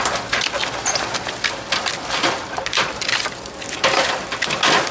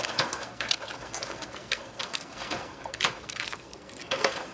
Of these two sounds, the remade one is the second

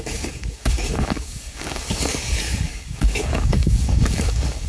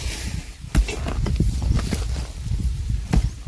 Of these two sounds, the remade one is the first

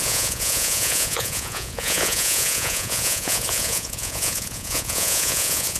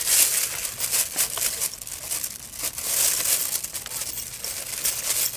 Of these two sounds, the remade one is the first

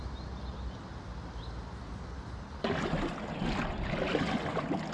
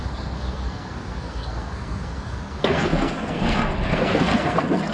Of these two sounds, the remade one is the second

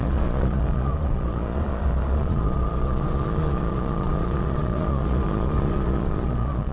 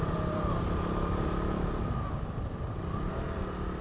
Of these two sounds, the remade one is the first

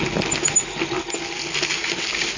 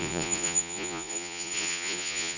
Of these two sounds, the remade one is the second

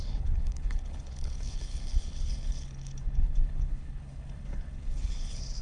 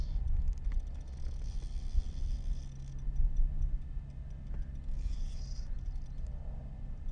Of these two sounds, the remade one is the first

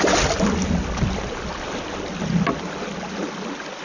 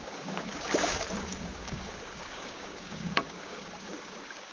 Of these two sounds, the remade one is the second